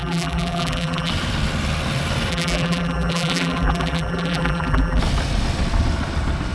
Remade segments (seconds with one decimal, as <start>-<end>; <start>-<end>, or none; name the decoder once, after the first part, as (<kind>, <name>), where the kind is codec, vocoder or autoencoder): 0.0-1.1 (vocoder, BigVGAN v2); 2.3-5.0